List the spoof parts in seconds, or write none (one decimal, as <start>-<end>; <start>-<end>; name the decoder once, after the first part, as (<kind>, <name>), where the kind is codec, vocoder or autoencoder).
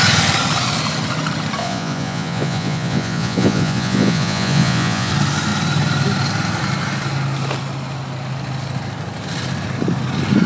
1.6-5.1 (vocoder, Vocos)